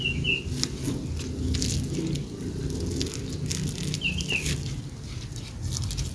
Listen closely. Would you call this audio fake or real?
real